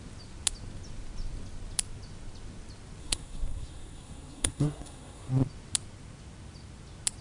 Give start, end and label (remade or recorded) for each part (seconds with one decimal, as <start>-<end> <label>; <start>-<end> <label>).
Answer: 0.0-3.0 recorded; 3.0-5.3 remade; 5.3-7.2 recorded